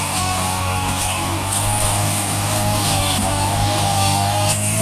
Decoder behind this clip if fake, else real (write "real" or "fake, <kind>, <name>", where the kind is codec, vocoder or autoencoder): fake, codec, DAC